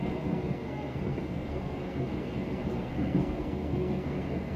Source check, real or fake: fake